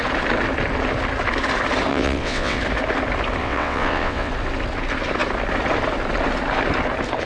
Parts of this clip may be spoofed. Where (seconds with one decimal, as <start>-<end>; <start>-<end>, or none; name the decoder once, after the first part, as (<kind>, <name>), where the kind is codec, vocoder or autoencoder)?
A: 1.9-2.6 (vocoder, WaveNeXt); 3.4-4.3